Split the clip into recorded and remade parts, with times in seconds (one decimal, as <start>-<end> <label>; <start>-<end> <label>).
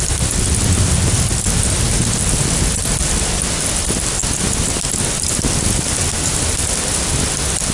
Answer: 0.0-7.7 recorded